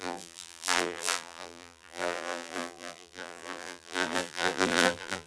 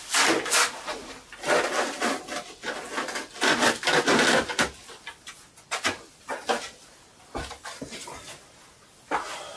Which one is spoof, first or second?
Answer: first